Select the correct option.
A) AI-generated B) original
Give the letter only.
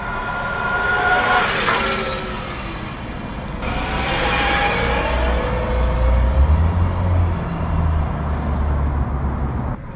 B